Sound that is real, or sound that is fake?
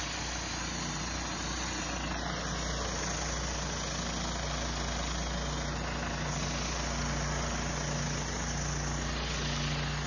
real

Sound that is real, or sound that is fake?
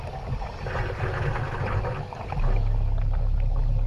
real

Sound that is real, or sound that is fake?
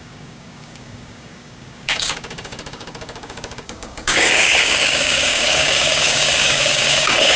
fake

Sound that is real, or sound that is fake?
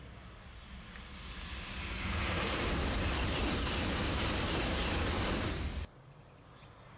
real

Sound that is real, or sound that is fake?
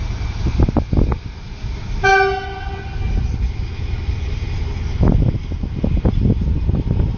real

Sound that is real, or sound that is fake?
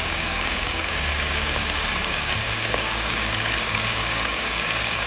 fake